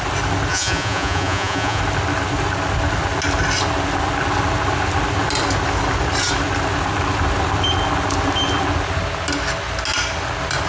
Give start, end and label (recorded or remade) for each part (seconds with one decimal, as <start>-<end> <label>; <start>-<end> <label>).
0.0-0.5 recorded; 0.5-1.8 remade; 1.8-10.7 recorded